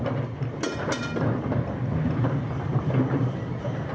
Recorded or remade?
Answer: recorded